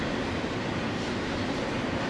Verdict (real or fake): real